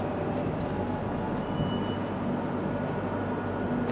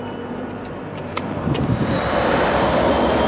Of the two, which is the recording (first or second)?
first